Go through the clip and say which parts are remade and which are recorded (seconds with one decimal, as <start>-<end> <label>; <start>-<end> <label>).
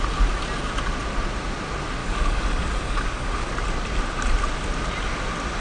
0.0-2.0 recorded; 2.0-3.5 remade; 3.5-5.6 recorded